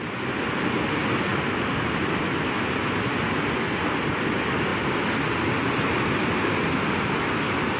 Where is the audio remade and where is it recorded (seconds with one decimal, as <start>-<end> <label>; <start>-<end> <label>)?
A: 0.0-7.8 recorded